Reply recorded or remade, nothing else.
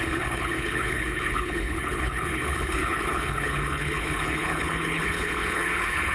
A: remade